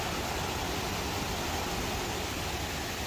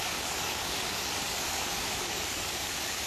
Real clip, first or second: first